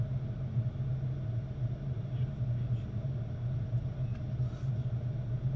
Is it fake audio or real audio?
real